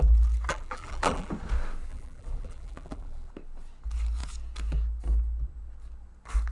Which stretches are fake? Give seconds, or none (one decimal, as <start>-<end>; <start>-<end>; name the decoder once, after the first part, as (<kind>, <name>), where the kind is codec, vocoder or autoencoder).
0.5-1.3 (vocoder, BigVGAN v2); 1.9-3.3